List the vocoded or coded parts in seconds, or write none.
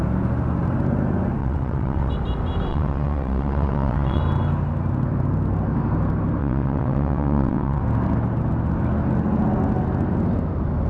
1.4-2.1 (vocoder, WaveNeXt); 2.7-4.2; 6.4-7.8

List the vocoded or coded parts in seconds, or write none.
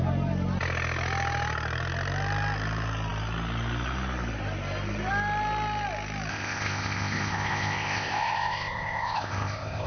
6.3-9.9 (codec, ZipCodec)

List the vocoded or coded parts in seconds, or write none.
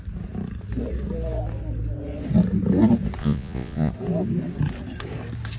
3.2-3.9 (vocoder, Vocos)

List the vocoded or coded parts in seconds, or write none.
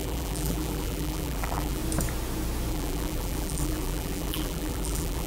0.0-1.8 (vocoder, BigVGAN v2); 2.7-5.3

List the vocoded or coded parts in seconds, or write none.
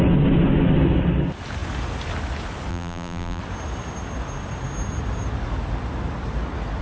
2.7-3.4 (vocoder, BigVGAN v2)